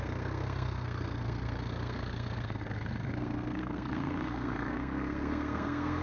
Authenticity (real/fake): fake